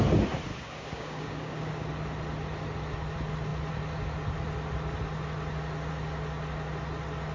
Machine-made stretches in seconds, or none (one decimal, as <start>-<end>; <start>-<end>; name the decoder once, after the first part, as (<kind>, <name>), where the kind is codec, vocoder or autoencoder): 0.5-1.9 (codec, DAC)